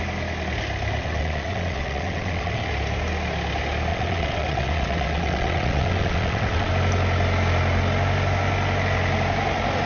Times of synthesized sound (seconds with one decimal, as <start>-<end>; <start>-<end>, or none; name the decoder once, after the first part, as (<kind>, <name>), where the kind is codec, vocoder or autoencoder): 1.0-2.7 (vocoder, WaveNeXt); 3.9-6.7